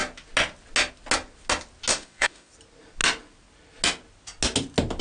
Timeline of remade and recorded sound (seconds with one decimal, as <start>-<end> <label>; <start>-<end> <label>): 0.0-1.9 recorded; 1.9-2.5 remade; 2.5-5.0 recorded

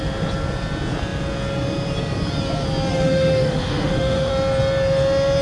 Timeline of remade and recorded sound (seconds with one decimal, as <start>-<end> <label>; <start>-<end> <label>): 0.0-2.9 recorded; 2.9-4.3 remade; 4.3-5.4 recorded